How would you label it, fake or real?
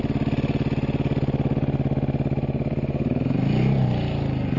real